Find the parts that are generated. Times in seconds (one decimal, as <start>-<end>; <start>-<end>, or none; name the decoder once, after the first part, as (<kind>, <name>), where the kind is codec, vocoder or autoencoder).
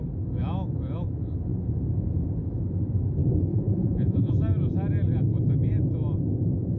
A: 3.5-4.3 (vocoder, Vocos)